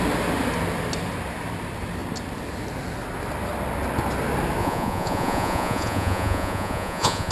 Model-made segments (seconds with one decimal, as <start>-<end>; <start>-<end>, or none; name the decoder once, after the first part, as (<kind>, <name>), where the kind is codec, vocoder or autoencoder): 4.6-7.3 (vocoder, Vocos)